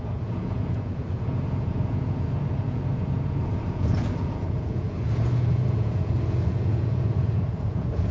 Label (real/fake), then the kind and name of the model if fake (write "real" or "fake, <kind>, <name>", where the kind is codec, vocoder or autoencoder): fake, vocoder, Vocos